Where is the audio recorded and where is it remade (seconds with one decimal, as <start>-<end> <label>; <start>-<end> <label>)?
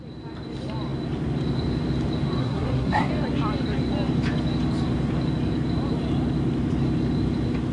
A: 0.0-2.4 recorded; 2.4-3.1 remade; 3.1-7.7 recorded